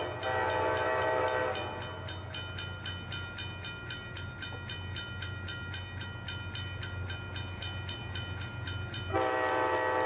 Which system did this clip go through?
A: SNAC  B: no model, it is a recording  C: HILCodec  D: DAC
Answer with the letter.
B